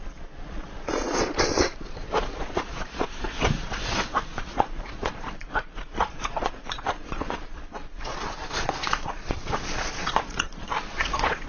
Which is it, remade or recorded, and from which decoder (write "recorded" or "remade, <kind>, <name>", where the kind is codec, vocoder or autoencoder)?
remade, vocoder, Vocos